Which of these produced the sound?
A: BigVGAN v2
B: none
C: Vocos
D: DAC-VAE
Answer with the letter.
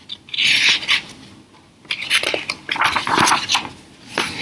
B